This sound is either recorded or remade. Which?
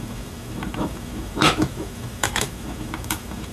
remade